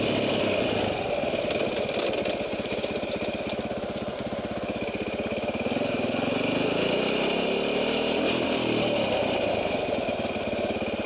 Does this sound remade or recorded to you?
recorded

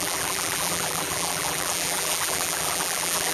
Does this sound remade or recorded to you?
remade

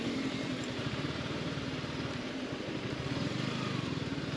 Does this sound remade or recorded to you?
remade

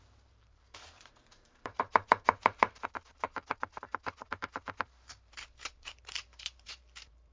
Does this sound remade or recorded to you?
remade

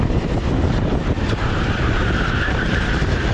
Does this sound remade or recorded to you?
remade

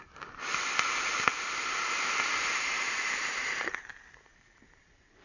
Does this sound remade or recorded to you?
remade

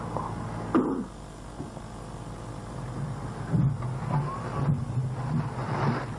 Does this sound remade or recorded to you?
recorded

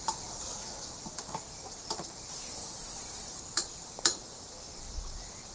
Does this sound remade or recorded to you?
remade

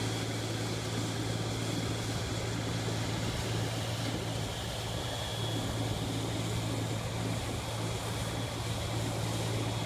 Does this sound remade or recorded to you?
recorded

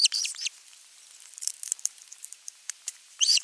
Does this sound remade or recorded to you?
remade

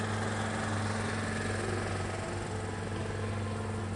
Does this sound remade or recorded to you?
recorded